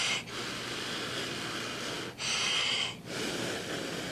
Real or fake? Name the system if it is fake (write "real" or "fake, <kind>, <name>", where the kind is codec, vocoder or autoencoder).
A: real